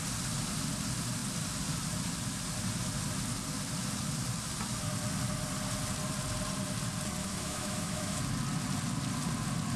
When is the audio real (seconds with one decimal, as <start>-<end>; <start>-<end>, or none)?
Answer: 0.0-7.2; 8.2-9.8